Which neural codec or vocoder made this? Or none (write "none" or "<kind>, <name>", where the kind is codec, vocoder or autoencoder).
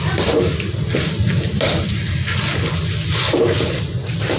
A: none